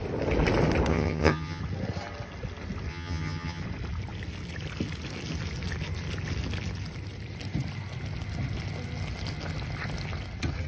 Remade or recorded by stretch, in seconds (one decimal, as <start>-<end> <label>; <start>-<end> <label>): 0.0-0.9 recorded; 0.9-1.6 remade; 1.6-2.9 recorded; 2.9-3.6 remade; 3.6-10.7 recorded